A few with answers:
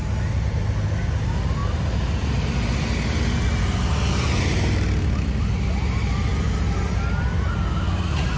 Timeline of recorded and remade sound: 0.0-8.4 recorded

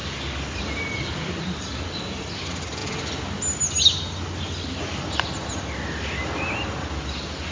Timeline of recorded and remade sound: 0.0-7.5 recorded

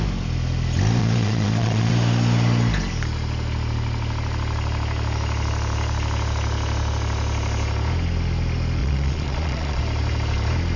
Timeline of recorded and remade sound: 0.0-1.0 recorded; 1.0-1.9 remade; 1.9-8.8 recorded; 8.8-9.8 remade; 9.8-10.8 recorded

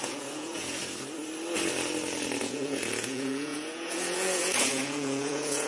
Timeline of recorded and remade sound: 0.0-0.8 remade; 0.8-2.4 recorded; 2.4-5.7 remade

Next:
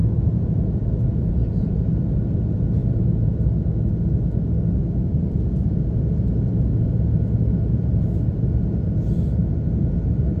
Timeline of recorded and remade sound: 0.0-1.9 remade; 1.9-2.8 recorded; 2.8-3.3 remade; 3.3-10.4 recorded

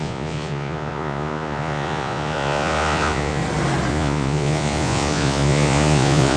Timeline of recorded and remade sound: 0.0-3.4 remade; 3.4-3.9 recorded; 3.9-6.4 remade

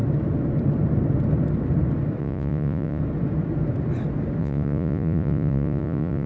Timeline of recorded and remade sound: 0.0-2.2 recorded; 2.2-3.0 remade; 3.0-4.4 recorded; 4.4-6.3 remade

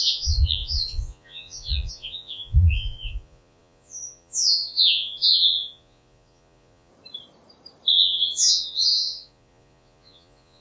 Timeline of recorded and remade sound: 0.0-6.9 remade; 6.9-7.9 recorded; 7.9-10.6 remade